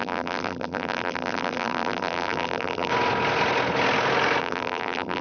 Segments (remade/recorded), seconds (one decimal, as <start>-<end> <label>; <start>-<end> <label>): 0.0-2.9 remade; 2.9-4.4 recorded; 4.4-5.2 remade